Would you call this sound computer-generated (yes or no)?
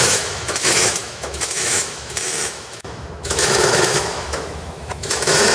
yes